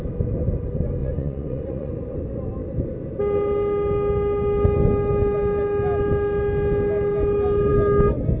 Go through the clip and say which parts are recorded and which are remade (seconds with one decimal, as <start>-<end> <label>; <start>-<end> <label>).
0.0-1.0 recorded; 1.0-1.9 remade; 1.9-8.4 recorded